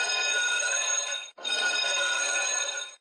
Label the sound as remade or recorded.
remade